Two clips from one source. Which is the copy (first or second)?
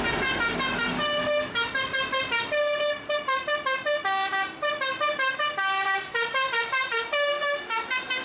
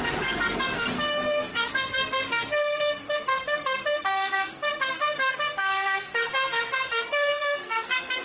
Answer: second